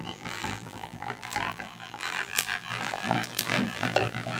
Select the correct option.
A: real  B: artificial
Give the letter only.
B